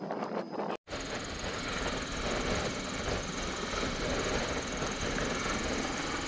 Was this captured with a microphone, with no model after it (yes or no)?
yes